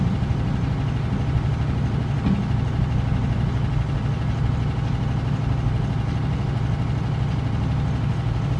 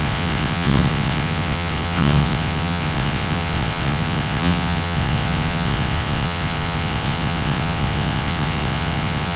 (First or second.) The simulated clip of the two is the second